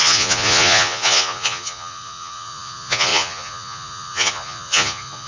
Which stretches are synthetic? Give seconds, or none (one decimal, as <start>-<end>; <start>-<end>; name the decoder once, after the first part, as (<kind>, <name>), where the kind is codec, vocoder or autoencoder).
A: 0.0-5.3 (vocoder, Vocos)